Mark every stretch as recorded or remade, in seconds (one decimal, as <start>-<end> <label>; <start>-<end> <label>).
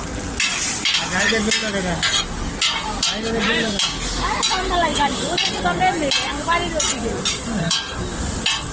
0.0-4.9 recorded; 4.9-5.5 remade; 5.5-7.3 recorded; 7.3-7.9 remade; 7.9-8.7 recorded